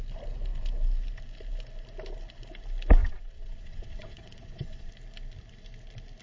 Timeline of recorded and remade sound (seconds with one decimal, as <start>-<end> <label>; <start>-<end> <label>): 0.0-3.0 recorded; 3.0-4.9 remade; 4.9-6.2 recorded